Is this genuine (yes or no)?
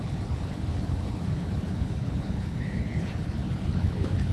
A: no